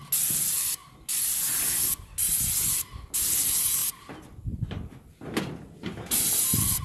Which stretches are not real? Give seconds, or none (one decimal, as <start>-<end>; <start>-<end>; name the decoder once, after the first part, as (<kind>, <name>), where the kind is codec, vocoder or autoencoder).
none